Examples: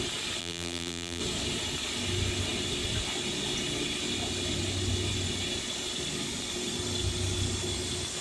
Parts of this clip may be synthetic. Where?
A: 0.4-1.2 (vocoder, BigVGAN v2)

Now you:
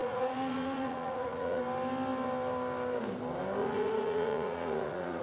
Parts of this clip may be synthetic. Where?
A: 0.0-1.6 (vocoder, Vocos); 3.6-5.2

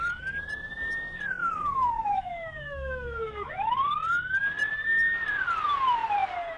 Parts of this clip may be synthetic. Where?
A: 1.4-3.5 (autoencoder, DAC-VAE)

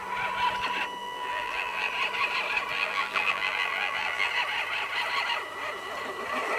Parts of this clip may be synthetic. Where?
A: 1.0-1.9 (vocoder, BigVGAN v2); 2.7-4.3

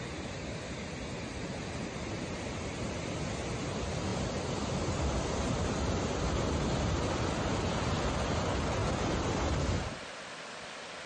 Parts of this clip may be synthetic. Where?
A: none

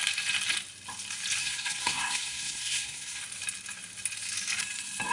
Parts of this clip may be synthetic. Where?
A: 1.4-3.2 (codec, SNAC)